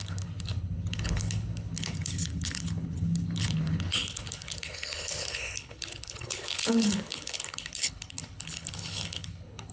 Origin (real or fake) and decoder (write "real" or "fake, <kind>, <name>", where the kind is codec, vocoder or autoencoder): fake, codec, HILCodec